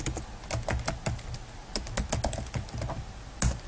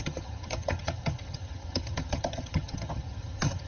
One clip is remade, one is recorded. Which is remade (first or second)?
second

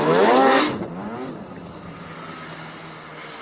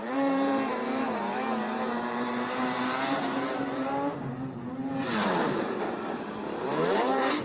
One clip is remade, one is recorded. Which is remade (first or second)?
second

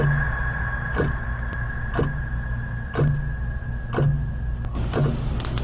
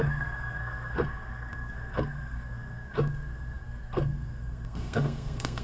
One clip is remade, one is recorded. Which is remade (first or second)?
second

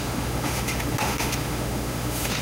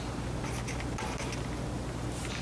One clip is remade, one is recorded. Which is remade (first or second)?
first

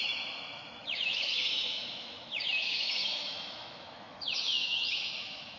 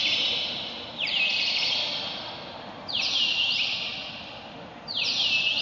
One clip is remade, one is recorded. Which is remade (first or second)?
first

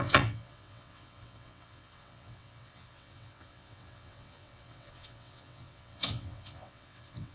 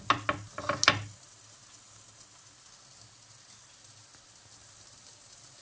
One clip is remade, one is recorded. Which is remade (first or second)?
first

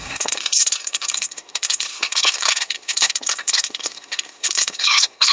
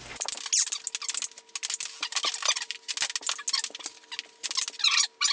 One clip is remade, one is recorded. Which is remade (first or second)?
first